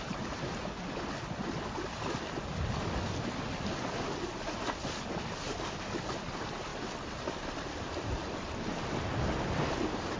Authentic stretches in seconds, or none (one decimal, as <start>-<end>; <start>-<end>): 0.0-10.2